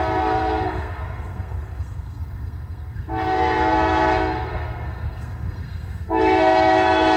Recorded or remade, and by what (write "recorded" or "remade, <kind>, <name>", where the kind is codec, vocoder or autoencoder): remade, codec, SNAC